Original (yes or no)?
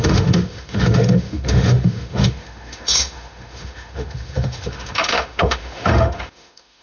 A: no